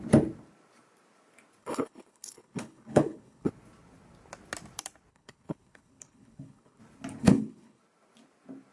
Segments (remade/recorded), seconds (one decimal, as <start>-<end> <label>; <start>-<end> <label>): 0.0-1.6 recorded; 1.6-3.5 remade; 3.5-5.1 recorded; 5.1-6.8 remade; 6.8-7.2 recorded; 7.2-7.8 remade; 7.8-8.7 recorded

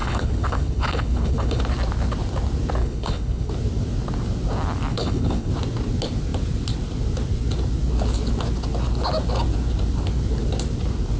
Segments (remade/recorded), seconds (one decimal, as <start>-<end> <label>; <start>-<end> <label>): 0.0-1.6 remade; 1.6-2.8 recorded; 2.8-3.5 remade; 3.5-4.9 recorded; 4.9-5.5 remade; 5.5-11.2 recorded

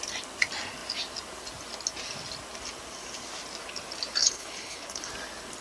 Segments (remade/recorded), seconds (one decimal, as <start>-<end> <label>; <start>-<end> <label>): 0.0-4.2 recorded; 4.2-5.1 remade; 5.1-5.6 recorded

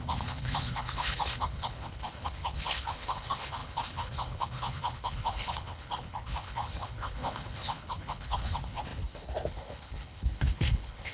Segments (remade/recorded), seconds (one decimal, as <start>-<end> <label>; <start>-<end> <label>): 0.0-11.1 remade

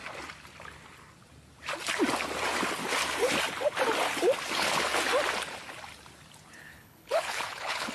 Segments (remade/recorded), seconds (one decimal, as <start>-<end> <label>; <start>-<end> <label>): 0.0-6.6 recorded; 6.6-7.9 remade